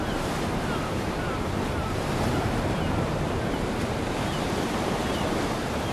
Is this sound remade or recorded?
remade